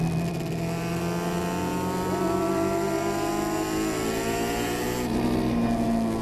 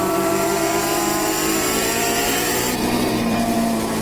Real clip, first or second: first